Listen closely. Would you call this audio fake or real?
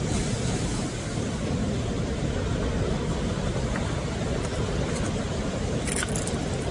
real